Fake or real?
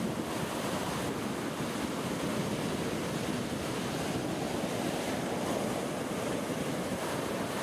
real